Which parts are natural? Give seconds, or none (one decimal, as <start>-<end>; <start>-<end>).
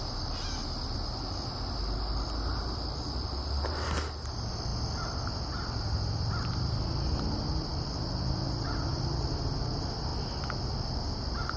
0.0-11.6